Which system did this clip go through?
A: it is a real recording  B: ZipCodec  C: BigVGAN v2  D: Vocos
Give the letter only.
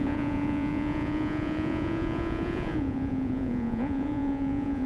D